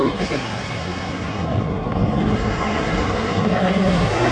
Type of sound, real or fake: fake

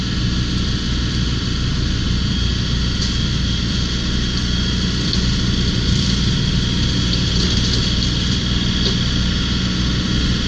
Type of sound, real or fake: real